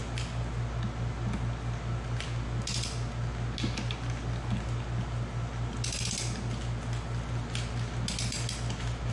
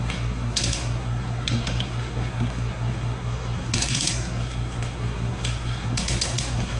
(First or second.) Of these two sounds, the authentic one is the first